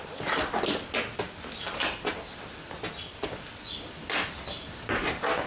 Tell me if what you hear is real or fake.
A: real